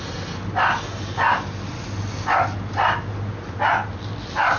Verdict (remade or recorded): recorded